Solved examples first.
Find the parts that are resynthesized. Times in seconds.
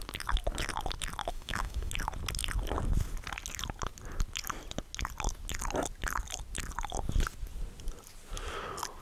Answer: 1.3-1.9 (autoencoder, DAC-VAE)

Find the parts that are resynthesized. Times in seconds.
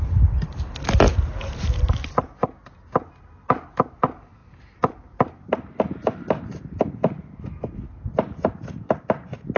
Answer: none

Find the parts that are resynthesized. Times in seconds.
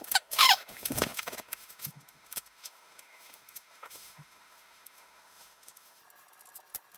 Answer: 0.0-6.0 (autoencoder, DAC-VAE)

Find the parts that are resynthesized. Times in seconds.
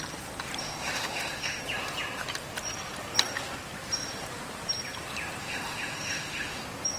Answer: 0.6-1.6 (autoencoder, DAC-VAE); 5.4-6.6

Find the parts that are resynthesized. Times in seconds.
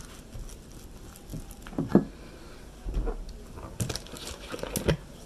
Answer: none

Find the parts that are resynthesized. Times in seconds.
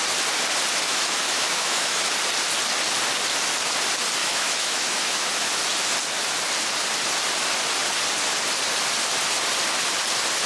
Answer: 0.9-2.0 (autoencoder, DAC-VAE); 4.2-5.3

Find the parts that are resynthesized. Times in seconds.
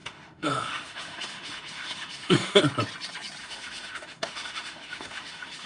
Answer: 0.0-2.6 (autoencoder, DAC-VAE); 3.4-5.7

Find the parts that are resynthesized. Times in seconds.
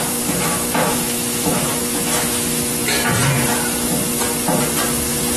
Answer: 0.8-2.6 (autoencoder, DAC-VAE)